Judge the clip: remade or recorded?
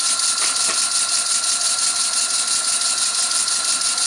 recorded